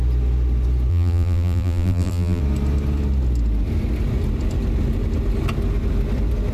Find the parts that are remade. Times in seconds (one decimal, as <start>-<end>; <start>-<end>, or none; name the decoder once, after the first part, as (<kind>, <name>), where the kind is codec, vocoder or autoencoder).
0.9-2.4 (vocoder, BigVGAN v2)